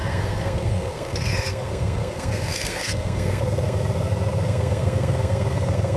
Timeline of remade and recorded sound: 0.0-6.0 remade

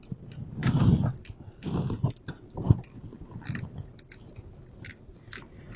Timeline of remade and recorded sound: 0.0-5.8 recorded

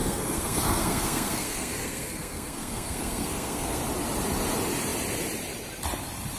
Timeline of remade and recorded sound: 0.0-3.8 remade; 3.8-6.4 recorded

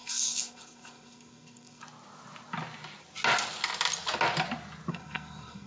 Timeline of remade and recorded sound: 0.0-1.8 remade; 1.8-4.9 recorded; 4.9-5.7 remade

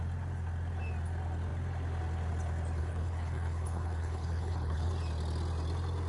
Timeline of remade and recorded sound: 0.0-2.8 recorded; 2.8-4.9 remade; 4.9-6.1 recorded

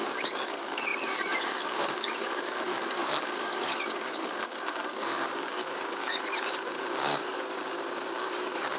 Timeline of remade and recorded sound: 0.0-8.8 remade

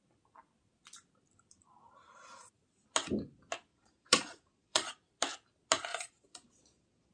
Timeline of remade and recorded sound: 0.0-3.7 recorded; 3.7-4.9 remade; 4.9-5.9 recorded; 5.9-7.1 remade

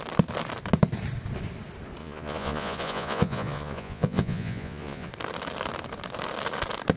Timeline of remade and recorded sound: 0.0-2.0 recorded; 2.0-5.1 remade; 5.1-7.0 recorded